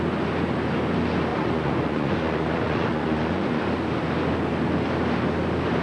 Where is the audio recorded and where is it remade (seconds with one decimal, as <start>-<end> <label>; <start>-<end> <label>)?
0.0-1.3 recorded; 1.3-3.6 remade; 3.6-5.8 recorded